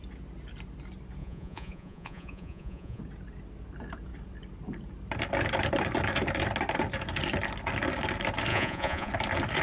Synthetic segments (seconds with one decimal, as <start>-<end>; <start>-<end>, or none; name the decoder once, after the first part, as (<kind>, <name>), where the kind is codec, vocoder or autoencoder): 1.2-3.0 (vocoder, Vocos); 8.5-9.1